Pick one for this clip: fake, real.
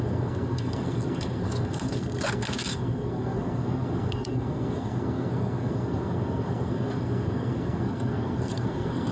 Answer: fake